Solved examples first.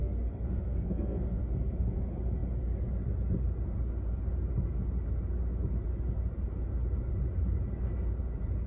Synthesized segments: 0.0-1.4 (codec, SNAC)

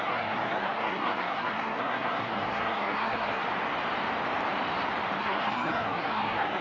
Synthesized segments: 0.0-3.4 (codec, SNAC); 5.2-6.6

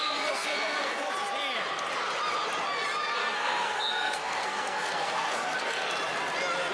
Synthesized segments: 0.0-1.1 (codec, SNAC); 3.2-5.9

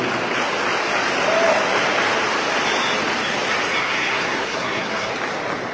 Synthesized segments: 3.8-5.1 (codec, SNAC)